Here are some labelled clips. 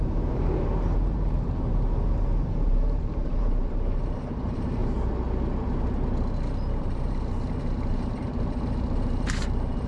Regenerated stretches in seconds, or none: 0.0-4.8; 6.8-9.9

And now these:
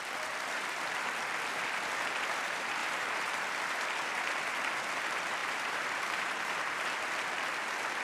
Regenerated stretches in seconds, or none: 2.8-3.4; 5.4-7.1

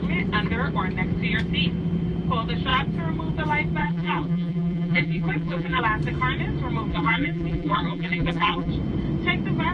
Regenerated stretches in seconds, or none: 3.8-5.8; 6.9-8.7

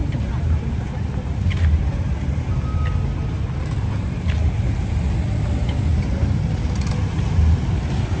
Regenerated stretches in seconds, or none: 0.0-2.4; 5.9-6.9

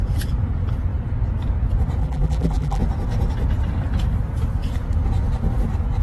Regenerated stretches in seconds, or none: 2.0-2.8

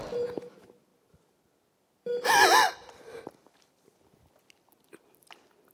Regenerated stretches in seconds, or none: 0.9-4.3

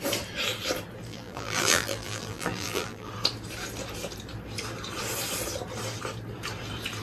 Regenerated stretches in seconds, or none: 1.1-3.1

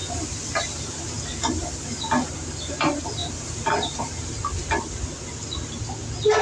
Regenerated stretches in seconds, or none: 1.7-2.3